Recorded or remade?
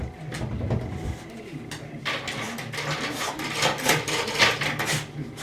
recorded